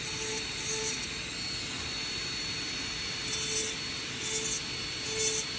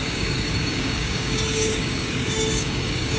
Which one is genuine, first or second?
first